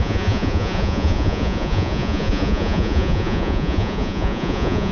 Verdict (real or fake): fake